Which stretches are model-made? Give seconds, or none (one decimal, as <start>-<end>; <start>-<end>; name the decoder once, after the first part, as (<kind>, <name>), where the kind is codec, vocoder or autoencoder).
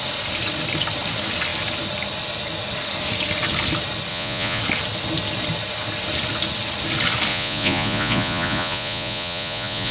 4.1-4.6 (vocoder, Vocos); 7.3-9.9